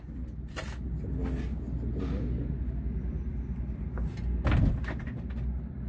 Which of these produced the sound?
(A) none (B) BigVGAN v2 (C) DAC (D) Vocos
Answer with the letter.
A